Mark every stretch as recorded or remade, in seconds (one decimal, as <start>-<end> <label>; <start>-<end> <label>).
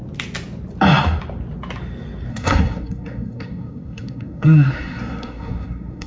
0.0-2.3 recorded; 2.3-6.1 remade